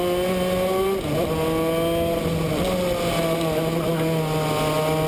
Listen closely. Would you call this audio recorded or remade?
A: recorded